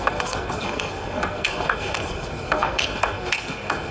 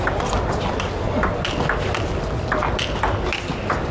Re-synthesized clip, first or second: first